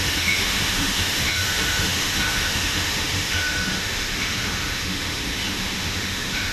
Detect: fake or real fake